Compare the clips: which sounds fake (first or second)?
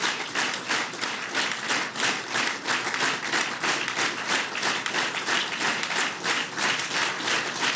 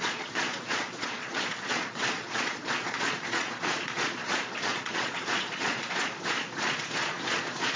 second